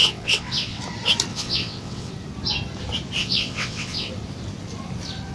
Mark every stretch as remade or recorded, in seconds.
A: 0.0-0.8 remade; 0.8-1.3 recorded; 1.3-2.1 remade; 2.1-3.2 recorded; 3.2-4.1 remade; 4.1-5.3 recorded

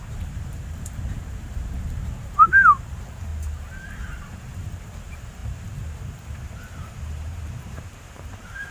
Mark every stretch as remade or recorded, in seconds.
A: 0.0-3.3 remade; 3.3-4.3 recorded; 4.3-8.7 remade

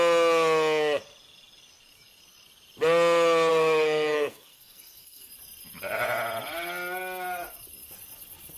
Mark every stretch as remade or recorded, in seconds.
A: 0.0-3.5 recorded; 3.5-5.3 remade; 5.3-8.6 recorded

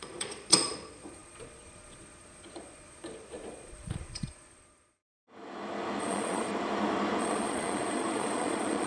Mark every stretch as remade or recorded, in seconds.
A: 0.0-5.0 remade; 5.0-6.0 recorded; 6.0-6.5 remade; 6.5-7.2 recorded; 7.2-8.9 remade

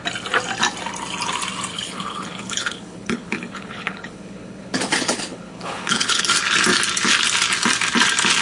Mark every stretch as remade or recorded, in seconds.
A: 0.0-1.7 recorded; 1.7-6.2 remade; 6.2-8.4 recorded

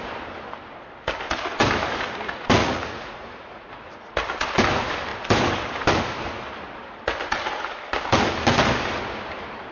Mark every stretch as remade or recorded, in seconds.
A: 0.0-2.6 recorded; 2.6-3.7 remade; 3.7-9.7 recorded

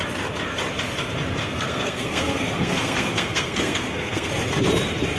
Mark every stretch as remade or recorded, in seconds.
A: 0.0-1.4 recorded; 1.4-4.3 remade; 4.3-5.2 recorded

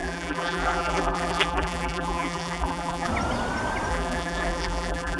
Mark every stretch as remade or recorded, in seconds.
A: 0.0-3.1 remade; 3.1-3.9 recorded; 3.9-5.2 remade